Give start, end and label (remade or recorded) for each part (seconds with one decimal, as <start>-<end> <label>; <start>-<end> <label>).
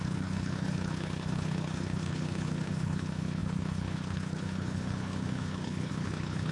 0.0-6.5 remade